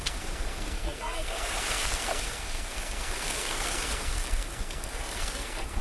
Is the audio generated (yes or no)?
yes